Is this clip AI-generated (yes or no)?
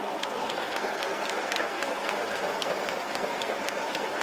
yes